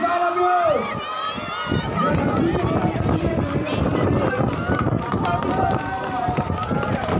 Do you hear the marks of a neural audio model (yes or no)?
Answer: no